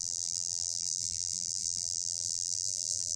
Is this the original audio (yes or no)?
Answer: no